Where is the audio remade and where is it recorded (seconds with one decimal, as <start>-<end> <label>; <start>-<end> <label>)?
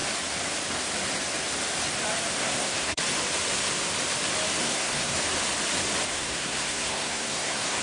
0.0-2.4 recorded; 2.4-3.0 remade; 3.0-4.6 recorded; 4.6-5.2 remade; 5.2-6.1 recorded; 6.1-7.8 remade